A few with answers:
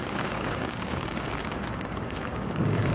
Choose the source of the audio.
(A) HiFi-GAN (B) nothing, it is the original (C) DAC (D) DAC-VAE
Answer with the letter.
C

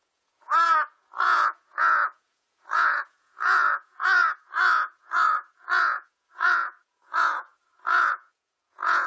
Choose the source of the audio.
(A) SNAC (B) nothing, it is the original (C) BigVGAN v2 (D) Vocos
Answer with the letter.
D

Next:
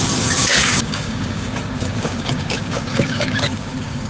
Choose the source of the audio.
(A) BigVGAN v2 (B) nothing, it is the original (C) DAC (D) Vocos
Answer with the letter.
C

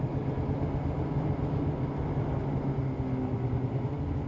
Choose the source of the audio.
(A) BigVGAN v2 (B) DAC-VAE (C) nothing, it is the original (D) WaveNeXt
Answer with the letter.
C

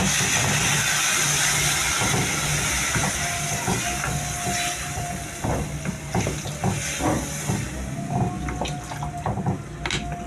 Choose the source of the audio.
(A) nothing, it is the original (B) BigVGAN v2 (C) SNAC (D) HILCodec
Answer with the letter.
A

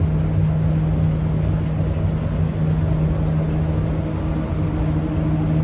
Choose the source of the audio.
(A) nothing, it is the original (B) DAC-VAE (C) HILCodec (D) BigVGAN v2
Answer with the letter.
A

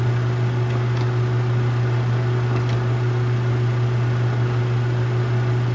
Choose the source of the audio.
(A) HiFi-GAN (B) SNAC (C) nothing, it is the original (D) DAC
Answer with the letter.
C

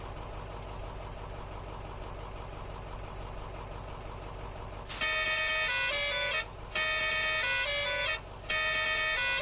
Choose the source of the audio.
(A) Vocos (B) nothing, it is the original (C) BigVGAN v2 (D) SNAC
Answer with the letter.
B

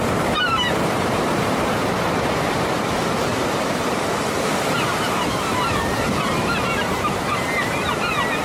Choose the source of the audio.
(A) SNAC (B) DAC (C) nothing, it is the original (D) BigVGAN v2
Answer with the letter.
D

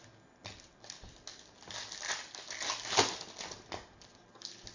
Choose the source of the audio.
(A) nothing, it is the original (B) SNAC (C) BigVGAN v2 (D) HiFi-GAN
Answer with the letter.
A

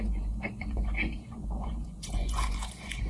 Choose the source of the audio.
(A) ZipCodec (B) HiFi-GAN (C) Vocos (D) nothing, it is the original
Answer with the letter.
C